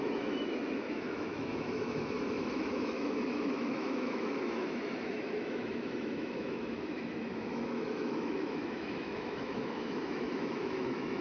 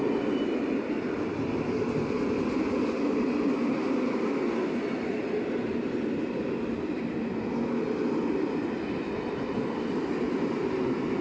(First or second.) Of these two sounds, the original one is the second